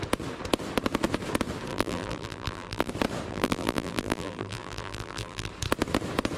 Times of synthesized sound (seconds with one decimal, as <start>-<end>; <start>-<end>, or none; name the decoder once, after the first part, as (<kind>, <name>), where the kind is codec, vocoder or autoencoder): 1.7-2.9 (vocoder, BigVGAN v2); 3.3-5.5